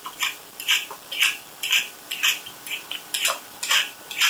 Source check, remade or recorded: remade